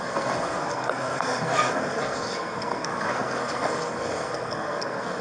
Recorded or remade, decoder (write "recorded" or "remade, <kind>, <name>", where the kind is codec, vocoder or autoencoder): remade, codec, SNAC